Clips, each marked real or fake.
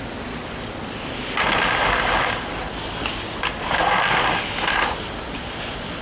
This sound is real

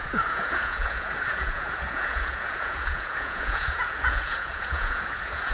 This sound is fake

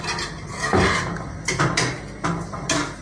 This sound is real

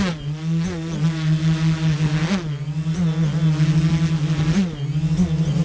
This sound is real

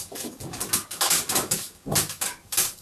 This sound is fake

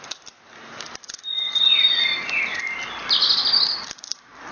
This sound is real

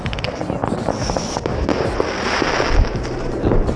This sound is real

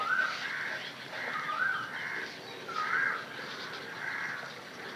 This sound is real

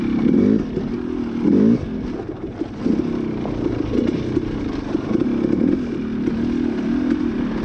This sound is real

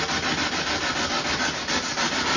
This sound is real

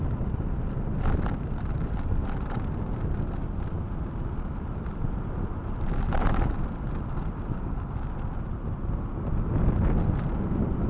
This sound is real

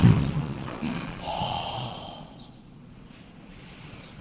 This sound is fake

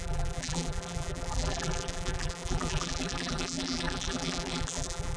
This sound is fake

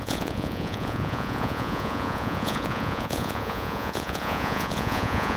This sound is fake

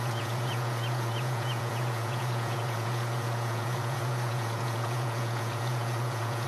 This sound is fake